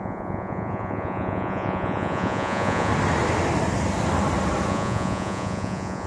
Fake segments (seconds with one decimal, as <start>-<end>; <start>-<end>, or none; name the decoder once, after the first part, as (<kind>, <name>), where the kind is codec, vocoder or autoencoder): 0.0-2.9 (vocoder, Vocos); 4.7-6.1